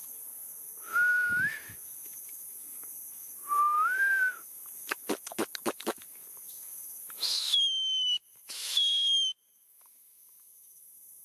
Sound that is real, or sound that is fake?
fake